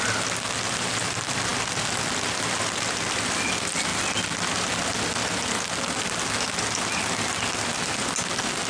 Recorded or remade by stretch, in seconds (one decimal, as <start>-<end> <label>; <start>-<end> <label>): 0.0-8.7 recorded